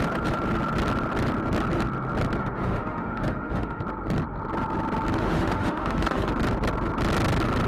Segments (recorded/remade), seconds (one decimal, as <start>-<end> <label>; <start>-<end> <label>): 0.0-2.4 recorded; 2.4-3.8 remade; 3.8-5.2 recorded; 5.2-6.3 remade; 6.3-7.7 recorded